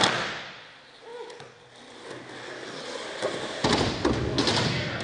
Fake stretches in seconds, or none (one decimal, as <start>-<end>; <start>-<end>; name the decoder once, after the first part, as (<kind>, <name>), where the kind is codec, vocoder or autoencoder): none